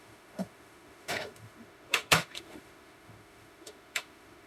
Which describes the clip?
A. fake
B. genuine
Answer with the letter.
A